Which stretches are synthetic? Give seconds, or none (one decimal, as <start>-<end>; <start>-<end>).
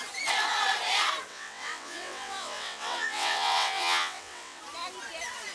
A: 1.3-4.6